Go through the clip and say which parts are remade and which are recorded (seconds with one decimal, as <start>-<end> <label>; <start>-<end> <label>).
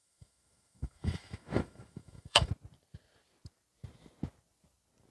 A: 0.0-2.5 remade; 2.5-5.1 recorded